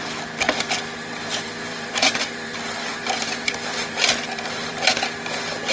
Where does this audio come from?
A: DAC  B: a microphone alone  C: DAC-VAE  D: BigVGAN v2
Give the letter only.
D